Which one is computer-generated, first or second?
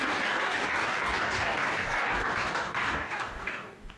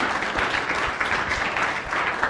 first